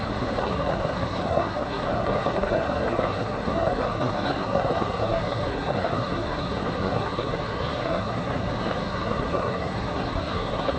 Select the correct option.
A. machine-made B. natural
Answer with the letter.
A